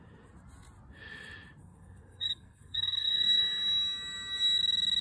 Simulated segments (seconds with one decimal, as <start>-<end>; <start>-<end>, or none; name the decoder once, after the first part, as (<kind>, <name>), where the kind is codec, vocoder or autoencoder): 1.6-3.4 (codec, SNAC)